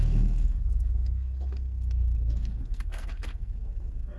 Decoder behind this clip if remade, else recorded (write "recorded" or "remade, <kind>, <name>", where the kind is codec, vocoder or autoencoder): remade, codec, SNAC